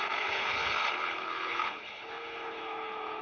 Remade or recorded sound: remade